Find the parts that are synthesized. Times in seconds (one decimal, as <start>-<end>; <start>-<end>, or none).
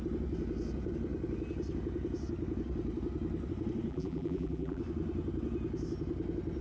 3.9-4.8